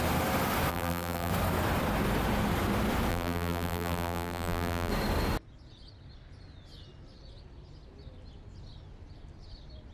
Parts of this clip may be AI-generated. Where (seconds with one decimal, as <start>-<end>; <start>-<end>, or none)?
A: 0.7-1.3; 3.1-4.9